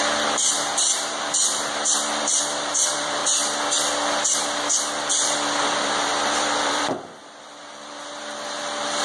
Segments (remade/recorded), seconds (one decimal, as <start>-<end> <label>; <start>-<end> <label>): 0.0-3.2 remade; 3.2-5.1 recorded; 5.1-9.0 remade